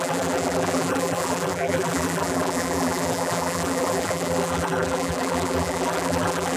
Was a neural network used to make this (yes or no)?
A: yes